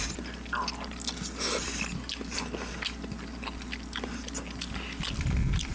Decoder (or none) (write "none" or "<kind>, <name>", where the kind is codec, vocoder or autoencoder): none